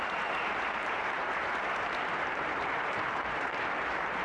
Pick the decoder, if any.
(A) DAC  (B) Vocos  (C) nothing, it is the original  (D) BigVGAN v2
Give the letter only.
D